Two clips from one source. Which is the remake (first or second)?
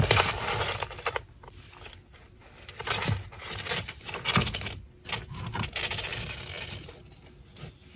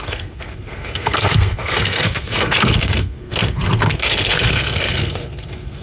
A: second